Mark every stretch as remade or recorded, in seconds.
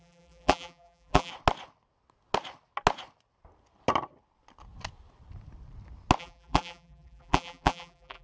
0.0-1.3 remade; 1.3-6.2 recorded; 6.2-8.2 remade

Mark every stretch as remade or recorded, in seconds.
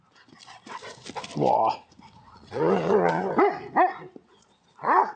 0.0-2.2 recorded; 2.2-3.3 remade; 3.3-4.2 recorded; 4.2-5.2 remade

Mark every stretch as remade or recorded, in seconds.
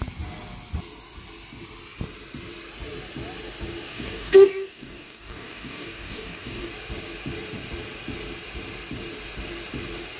0.0-3.9 recorded; 3.9-6.7 remade; 6.7-10.2 recorded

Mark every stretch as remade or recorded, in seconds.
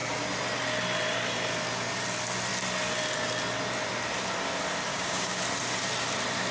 0.0-4.9 recorded; 4.9-5.4 remade; 5.4-6.5 recorded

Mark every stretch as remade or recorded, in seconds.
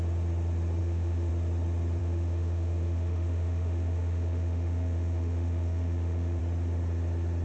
0.0-0.8 recorded; 0.8-1.3 remade; 1.3-2.0 recorded; 2.0-6.4 remade; 6.4-7.4 recorded